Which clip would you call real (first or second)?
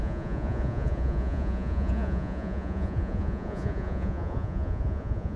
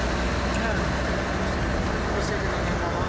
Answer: second